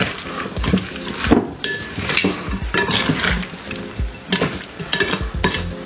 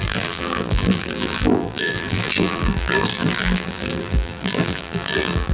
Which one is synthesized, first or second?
second